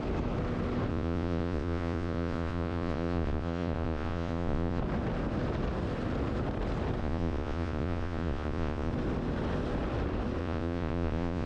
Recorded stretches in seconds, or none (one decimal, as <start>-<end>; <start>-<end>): 0.0-0.9; 4.8-7.0; 8.9-10.4